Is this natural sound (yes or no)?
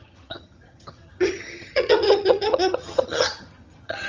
no